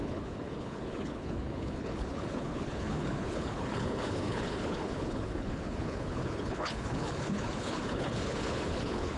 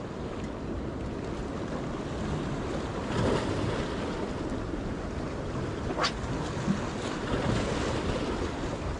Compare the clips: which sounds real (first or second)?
second